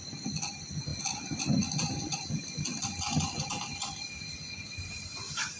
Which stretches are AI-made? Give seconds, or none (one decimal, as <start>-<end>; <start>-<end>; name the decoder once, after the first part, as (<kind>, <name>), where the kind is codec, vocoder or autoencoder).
none